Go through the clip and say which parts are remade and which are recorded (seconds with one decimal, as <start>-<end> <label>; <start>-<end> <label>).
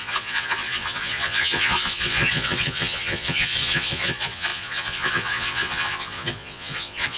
0.0-7.2 remade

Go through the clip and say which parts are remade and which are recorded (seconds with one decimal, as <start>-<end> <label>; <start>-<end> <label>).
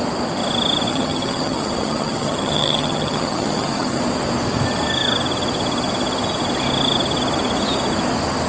0.0-0.9 recorded; 0.9-4.0 remade; 4.0-8.5 recorded